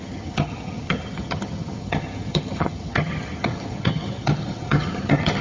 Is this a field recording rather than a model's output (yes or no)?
no